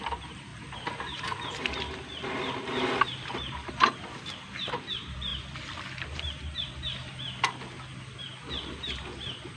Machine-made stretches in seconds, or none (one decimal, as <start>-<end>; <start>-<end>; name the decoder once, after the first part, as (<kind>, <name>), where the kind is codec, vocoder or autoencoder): 0.5-4.7 (vocoder, BigVGAN v2); 5.3-6.7